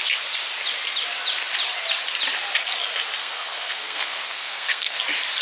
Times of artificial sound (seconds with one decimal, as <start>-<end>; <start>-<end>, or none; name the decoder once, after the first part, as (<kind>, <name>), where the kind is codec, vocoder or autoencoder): 3.2-5.0 (codec, SNAC)